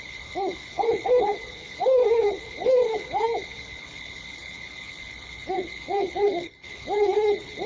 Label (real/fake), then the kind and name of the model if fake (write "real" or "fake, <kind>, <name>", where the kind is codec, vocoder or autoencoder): fake, codec, HILCodec